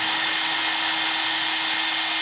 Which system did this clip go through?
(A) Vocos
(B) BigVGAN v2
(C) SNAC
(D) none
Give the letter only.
D